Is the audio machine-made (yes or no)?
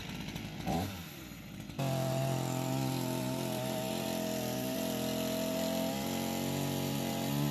no